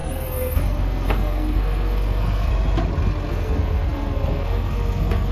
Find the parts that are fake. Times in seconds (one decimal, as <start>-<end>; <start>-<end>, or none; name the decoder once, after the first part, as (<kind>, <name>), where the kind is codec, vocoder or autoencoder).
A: 0.0-2.5 (codec, SNAC); 3.3-5.3